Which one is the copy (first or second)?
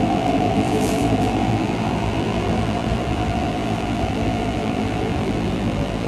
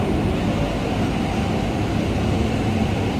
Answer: first